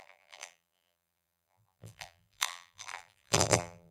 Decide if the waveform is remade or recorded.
remade